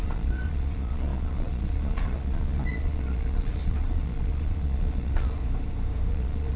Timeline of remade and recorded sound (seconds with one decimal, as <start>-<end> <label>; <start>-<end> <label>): 0.0-5.4 remade; 5.4-6.1 recorded; 6.1-6.6 remade